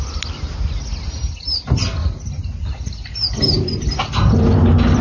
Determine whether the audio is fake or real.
real